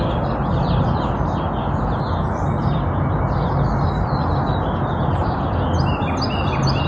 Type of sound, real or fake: real